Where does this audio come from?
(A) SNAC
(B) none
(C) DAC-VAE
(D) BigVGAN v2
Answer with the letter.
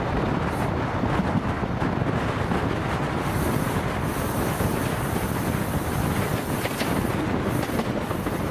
B